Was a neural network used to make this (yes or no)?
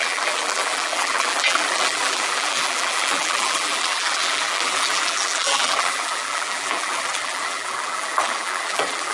yes